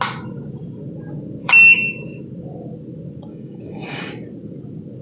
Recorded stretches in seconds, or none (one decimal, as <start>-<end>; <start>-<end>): 0.0-1.4; 2.2-3.3; 4.1-5.0